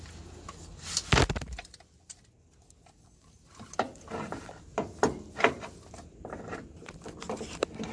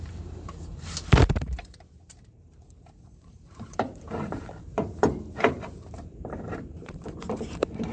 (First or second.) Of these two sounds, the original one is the first